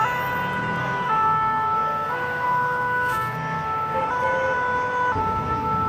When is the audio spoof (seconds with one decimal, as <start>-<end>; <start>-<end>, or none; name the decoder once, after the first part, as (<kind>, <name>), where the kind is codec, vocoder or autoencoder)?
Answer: 0.8-4.0 (codec, SNAC); 5.2-5.9